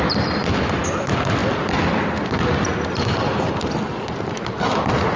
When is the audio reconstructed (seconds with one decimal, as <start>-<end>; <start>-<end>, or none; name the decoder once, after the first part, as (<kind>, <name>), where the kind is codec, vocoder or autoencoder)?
none